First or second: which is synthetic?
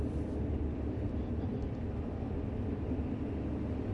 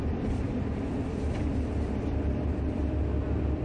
second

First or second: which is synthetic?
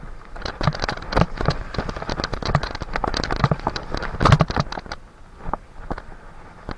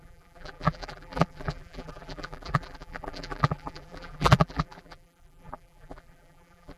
second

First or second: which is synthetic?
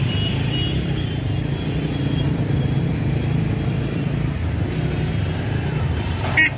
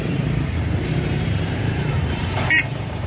second